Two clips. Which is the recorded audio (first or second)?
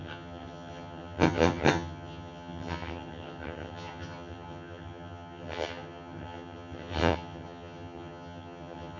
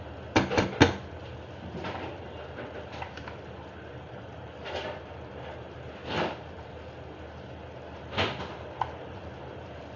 second